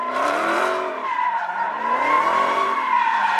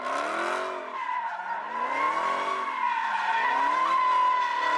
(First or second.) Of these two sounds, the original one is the second